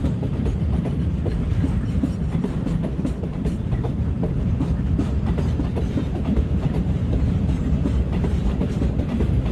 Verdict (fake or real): fake